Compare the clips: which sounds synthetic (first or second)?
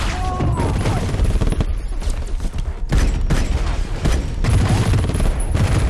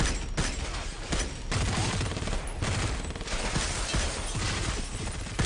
first